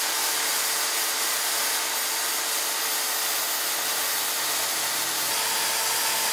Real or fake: real